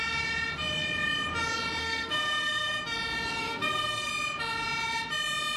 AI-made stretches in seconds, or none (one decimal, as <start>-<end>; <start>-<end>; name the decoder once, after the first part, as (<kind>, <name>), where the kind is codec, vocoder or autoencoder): 1.8-2.8 (codec, SNAC); 3.4-4.1

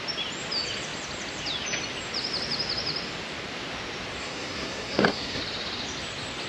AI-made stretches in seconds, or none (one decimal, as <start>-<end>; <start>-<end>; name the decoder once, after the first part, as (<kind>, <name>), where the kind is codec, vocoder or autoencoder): 4.2-5.4 (codec, SNAC)

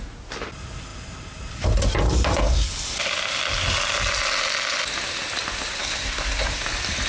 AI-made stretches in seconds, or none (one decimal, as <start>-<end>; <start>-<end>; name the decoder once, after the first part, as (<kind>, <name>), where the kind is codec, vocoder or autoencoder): 5.8-6.6 (codec, SNAC)

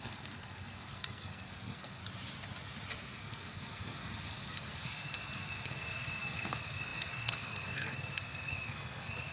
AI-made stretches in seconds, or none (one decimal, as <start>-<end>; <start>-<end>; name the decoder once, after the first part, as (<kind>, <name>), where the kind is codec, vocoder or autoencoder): 0.0-2.0 (codec, SNAC); 3.0-9.3

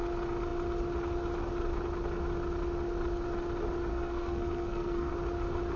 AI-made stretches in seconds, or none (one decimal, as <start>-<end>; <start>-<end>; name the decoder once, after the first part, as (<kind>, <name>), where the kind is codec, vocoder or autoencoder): 3.9-5.1 (codec, SNAC)

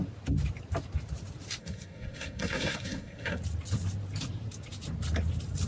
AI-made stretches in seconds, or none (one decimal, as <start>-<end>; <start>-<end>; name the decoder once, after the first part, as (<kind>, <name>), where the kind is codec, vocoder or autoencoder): 1.6-3.4 (codec, SNAC)

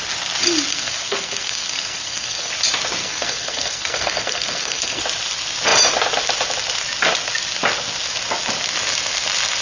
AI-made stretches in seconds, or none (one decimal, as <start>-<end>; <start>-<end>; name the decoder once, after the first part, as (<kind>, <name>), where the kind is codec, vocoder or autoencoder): 0.7-2.5 (codec, SNAC); 3.0-5.0

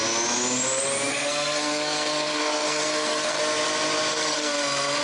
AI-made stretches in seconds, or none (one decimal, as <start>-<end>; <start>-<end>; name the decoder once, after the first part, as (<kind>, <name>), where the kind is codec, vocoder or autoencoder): 1.1-3.4 (codec, SNAC); 4.1-5.0